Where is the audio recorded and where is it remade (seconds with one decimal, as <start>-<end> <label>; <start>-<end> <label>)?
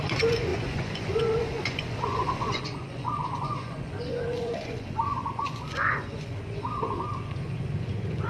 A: 0.0-8.3 remade